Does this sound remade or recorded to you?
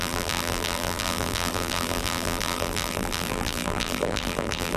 remade